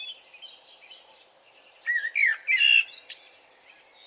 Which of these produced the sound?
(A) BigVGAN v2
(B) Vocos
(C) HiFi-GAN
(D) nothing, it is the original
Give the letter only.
D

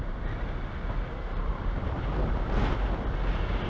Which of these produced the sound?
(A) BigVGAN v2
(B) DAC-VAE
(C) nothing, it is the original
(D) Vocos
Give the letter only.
C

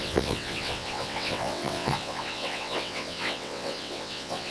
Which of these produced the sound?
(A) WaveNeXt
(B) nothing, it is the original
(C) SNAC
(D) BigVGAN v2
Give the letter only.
A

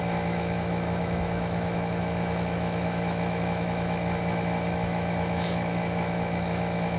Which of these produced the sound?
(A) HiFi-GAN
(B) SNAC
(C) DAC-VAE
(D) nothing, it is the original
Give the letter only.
C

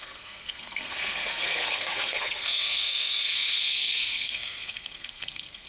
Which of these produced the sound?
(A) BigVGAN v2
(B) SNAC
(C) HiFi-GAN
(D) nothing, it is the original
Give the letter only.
B